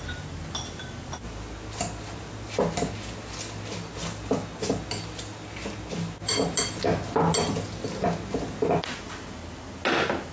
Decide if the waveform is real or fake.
real